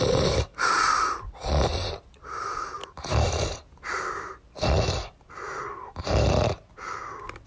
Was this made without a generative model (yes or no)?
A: yes